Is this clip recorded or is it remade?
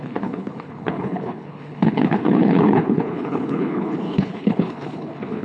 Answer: remade